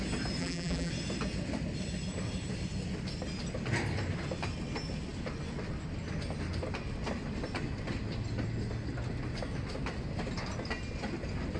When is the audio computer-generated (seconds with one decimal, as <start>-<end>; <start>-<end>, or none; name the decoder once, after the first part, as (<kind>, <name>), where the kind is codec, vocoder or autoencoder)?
0.4-0.9 (vocoder, BigVGAN v2)